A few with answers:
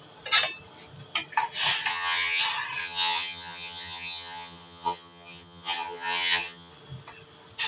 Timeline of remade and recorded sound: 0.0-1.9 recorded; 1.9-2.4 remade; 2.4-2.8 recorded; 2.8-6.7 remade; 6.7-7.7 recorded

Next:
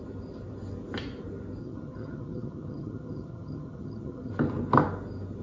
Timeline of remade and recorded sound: 0.0-1.6 recorded; 1.6-4.3 remade; 4.3-5.4 recorded